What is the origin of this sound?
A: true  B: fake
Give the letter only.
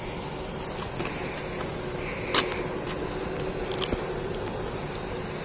A